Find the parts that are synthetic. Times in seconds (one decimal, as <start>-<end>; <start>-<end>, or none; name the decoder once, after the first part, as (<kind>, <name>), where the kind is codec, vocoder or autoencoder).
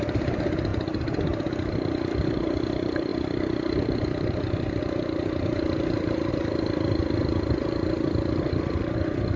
none